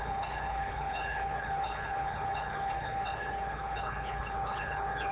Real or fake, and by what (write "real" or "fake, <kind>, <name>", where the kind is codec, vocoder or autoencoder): fake, codec, HILCodec